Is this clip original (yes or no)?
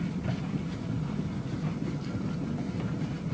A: yes